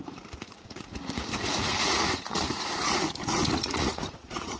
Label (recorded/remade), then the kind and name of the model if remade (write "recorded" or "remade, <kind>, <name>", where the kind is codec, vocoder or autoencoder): remade, vocoder, Vocos